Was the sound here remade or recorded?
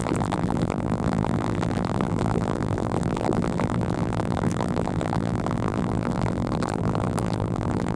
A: remade